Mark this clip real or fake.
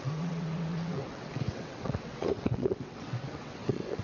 fake